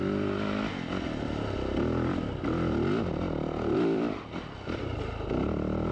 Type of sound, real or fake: real